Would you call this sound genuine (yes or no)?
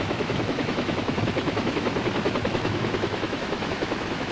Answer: no